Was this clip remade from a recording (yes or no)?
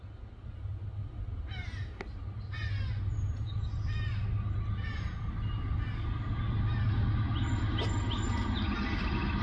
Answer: no